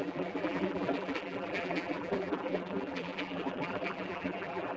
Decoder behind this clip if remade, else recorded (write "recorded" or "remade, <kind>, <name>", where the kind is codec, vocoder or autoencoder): remade, vocoder, BigVGAN v2